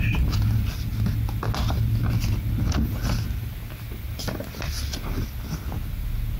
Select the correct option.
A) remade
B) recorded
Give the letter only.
B